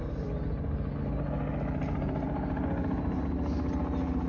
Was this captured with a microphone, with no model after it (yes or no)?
yes